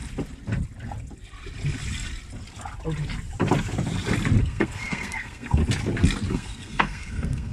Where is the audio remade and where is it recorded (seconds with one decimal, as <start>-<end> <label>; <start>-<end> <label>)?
0.0-4.4 recorded; 4.4-5.6 remade; 5.6-6.3 recorded; 6.3-7.5 remade